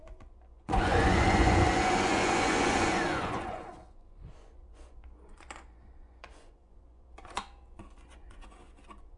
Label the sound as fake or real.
fake